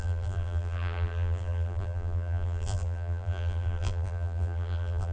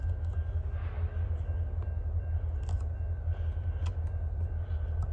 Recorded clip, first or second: second